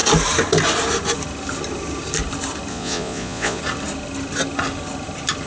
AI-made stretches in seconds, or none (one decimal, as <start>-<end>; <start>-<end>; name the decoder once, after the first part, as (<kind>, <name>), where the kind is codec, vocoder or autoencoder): 2.7-3.6 (vocoder, Vocos)